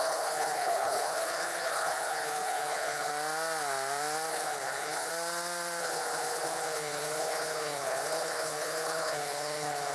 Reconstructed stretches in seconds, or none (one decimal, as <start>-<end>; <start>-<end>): 0.0-3.1; 4.3-5.1; 5.8-9.9